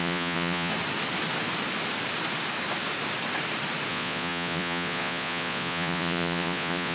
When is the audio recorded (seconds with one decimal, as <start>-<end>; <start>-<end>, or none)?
0.7-3.9